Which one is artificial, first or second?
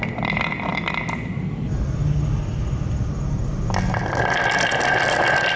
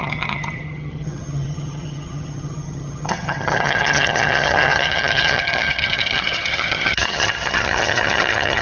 second